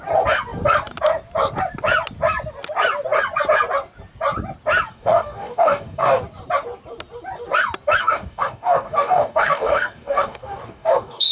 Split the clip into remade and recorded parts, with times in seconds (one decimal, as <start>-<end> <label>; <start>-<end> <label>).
0.0-4.9 recorded; 4.9-6.2 remade; 6.2-8.0 recorded; 8.0-11.3 remade